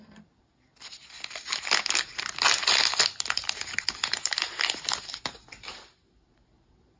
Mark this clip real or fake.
real